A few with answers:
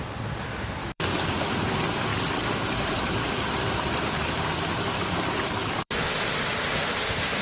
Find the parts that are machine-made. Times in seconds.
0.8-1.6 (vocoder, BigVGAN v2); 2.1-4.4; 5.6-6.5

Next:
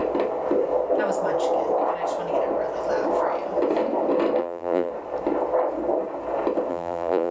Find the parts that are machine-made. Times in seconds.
4.4-4.9 (vocoder, BigVGAN v2); 6.7-7.3

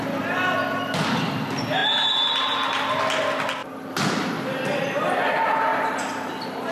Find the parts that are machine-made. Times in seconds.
3.6-4.8 (vocoder, BigVGAN v2); 5.7-6.7

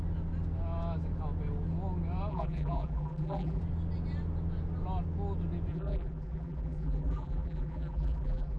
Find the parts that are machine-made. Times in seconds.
2.3-3.6 (vocoder, BigVGAN v2); 5.7-8.6

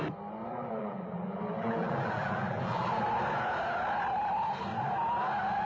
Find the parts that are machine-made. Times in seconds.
0.5-3.0 (vocoder, BigVGAN v2)

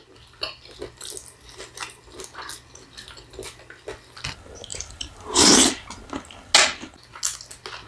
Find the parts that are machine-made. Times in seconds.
4.7-5.6 (vocoder, BigVGAN v2)

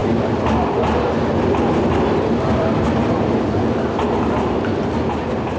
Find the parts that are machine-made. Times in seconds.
1.3-5.6 (vocoder, BigVGAN v2)